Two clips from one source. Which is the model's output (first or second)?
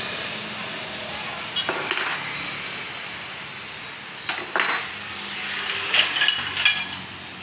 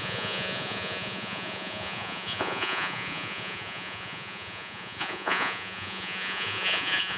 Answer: second